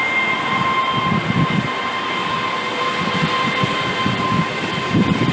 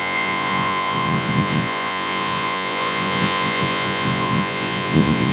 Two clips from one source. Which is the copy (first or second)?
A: second